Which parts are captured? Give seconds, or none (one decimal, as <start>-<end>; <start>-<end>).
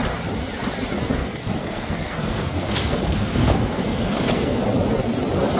0.0-1.2; 4.6-5.6